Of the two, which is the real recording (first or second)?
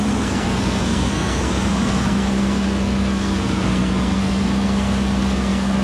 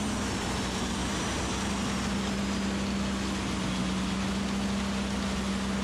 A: second